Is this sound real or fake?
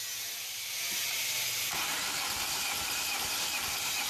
real